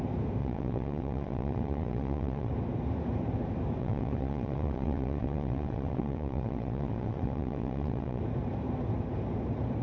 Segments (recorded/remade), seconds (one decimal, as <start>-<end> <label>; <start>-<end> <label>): 0.0-0.4 recorded; 0.4-2.5 remade; 2.5-3.8 recorded; 3.8-8.2 remade; 8.2-9.8 recorded